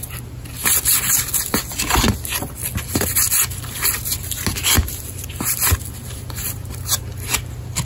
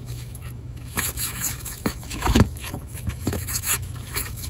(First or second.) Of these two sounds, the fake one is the second